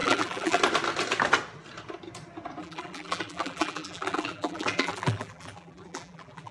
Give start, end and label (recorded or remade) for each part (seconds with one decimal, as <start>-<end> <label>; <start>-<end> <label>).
0.0-0.6 remade; 0.6-2.6 recorded; 2.6-6.5 remade